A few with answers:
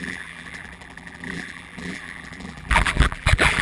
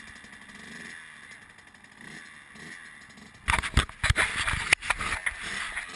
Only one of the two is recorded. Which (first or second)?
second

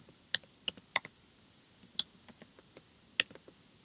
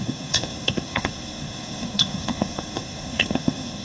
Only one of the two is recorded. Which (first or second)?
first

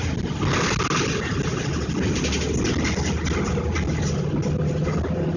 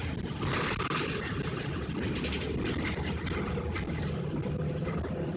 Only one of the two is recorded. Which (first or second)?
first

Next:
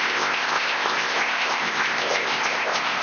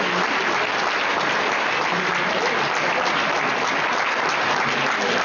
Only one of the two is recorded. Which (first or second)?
second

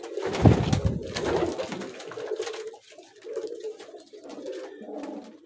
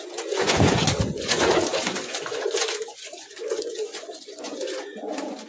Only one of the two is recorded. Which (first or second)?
first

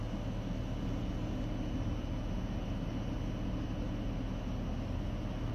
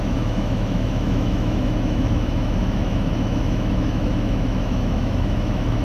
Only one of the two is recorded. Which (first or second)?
first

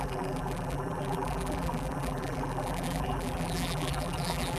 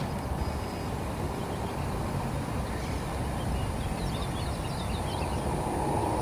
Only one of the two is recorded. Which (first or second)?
second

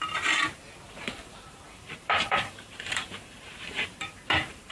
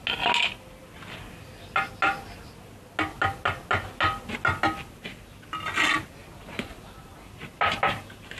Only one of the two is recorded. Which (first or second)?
second